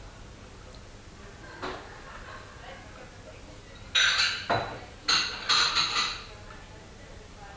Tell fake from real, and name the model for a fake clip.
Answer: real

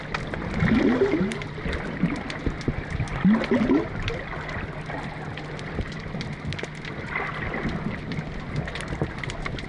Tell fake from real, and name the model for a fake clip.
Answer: real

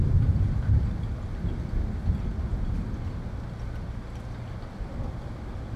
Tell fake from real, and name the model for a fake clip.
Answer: real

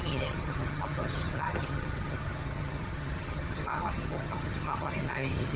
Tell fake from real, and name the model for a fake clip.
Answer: fake, vocoder, HiFi-GAN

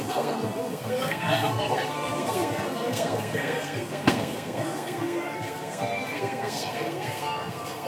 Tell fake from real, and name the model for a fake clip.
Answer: fake, codec, SNAC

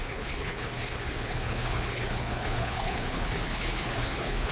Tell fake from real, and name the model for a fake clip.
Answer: fake, codec, HILCodec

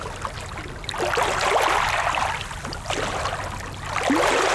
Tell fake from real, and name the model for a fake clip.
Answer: real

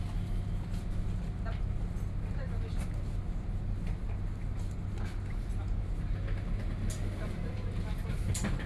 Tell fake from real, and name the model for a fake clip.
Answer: real